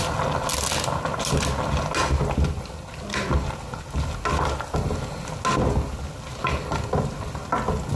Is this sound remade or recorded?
recorded